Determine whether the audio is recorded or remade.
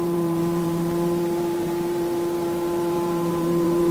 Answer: remade